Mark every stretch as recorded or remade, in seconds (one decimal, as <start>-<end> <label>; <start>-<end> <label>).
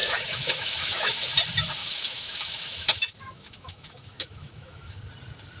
0.0-1.1 remade; 1.1-1.8 recorded; 1.8-5.0 remade; 5.0-5.6 recorded